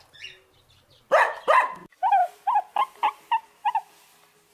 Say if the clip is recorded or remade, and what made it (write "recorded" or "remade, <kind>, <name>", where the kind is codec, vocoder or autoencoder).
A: recorded